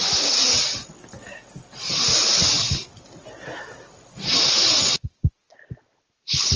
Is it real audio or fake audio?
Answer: real